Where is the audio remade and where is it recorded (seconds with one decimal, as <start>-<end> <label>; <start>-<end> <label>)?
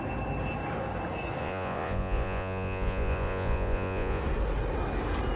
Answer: 0.0-1.4 recorded; 1.4-4.2 remade; 4.2-5.4 recorded